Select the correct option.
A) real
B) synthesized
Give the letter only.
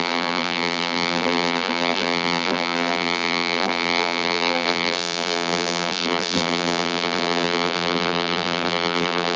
B